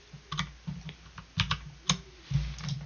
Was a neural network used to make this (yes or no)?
no